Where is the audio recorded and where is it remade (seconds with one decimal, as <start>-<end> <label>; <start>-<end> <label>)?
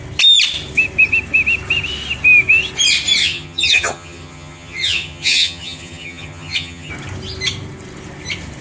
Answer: 0.0-3.2 recorded; 3.2-6.9 remade; 6.9-8.6 recorded